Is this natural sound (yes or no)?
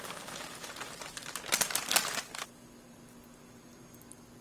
yes